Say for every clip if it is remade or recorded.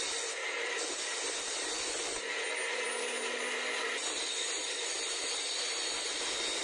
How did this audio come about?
recorded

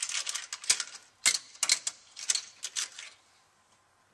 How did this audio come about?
recorded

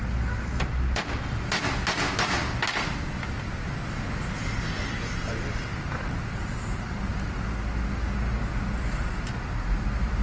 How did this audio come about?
recorded